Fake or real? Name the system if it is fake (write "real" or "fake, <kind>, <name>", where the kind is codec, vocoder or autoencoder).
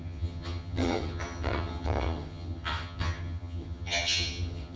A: fake, vocoder, HiFi-GAN